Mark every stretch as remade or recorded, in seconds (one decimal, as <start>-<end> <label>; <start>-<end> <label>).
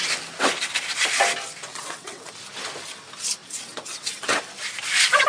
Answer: 0.0-1.7 recorded; 1.7-2.3 remade; 2.3-3.4 recorded; 3.4-4.4 remade; 4.4-5.3 recorded